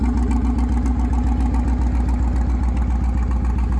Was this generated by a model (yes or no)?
no